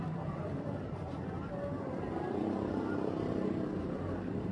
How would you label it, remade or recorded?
remade